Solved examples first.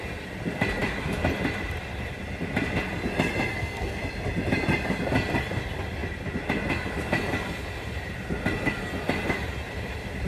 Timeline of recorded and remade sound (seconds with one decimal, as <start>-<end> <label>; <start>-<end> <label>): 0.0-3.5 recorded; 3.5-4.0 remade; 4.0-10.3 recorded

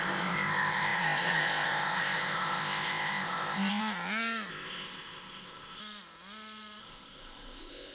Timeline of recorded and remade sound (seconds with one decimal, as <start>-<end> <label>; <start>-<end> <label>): 0.0-3.8 remade; 3.8-4.5 recorded; 4.5-5.8 remade; 5.8-6.8 recorded; 6.8-7.9 remade

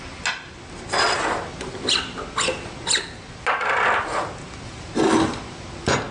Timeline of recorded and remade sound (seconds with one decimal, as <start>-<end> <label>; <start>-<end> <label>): 0.0-6.1 recorded